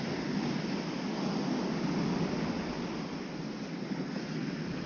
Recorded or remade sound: recorded